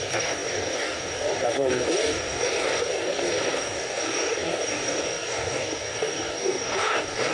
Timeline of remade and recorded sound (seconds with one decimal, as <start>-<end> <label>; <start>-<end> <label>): 0.0-7.3 remade